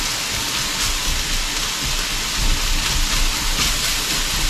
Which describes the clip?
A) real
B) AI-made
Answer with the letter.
A